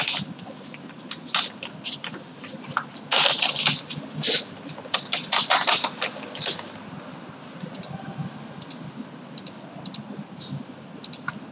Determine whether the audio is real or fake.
real